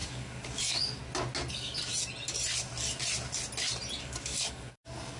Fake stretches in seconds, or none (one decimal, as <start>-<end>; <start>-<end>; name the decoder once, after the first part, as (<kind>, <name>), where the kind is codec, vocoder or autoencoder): 0.0-1.0 (codec, DAC); 1.5-1.9; 4.0-5.2